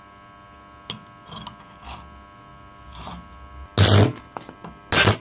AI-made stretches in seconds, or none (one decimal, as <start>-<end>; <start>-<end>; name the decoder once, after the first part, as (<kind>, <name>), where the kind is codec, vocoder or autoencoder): none